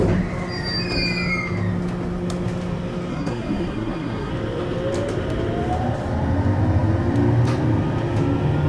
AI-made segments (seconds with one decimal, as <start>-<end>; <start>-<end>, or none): 3.1-4.3